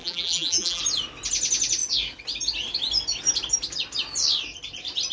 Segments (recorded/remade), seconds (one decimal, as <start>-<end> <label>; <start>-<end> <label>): 0.0-0.8 remade; 0.8-5.1 recorded